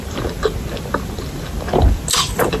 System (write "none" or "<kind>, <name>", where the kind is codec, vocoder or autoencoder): none